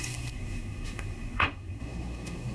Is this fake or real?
fake